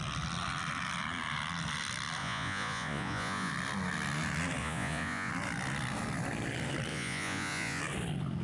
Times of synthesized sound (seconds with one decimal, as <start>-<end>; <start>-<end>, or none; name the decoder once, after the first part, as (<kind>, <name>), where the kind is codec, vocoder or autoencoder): 2.2-3.5 (vocoder, Vocos); 4.6-5.3; 6.9-7.8